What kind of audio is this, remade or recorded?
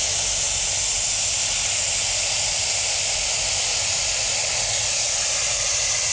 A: remade